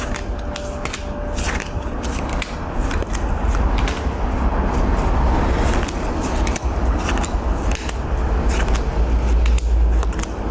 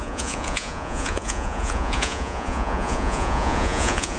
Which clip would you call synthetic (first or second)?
second